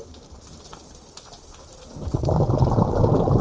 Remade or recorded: recorded